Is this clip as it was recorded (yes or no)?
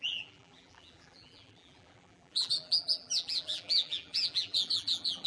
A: no